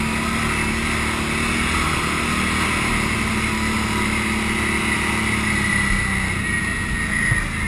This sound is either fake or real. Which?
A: real